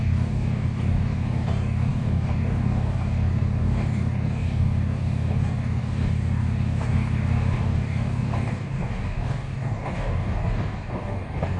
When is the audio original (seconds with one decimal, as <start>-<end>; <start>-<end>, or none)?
none